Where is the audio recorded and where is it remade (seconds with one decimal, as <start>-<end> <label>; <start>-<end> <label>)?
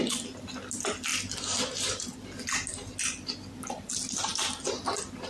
0.0-5.3 recorded